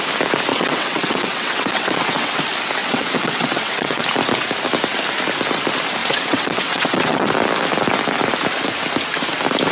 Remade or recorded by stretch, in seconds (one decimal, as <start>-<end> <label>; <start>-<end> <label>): 0.0-0.5 recorded; 0.5-2.4 remade; 2.4-2.8 recorded; 2.8-4.0 remade; 4.0-6.0 recorded; 6.0-7.3 remade; 7.3-9.7 recorded